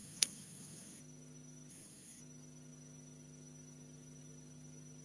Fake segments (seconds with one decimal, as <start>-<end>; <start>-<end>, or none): 0.0-1.0; 1.7-2.2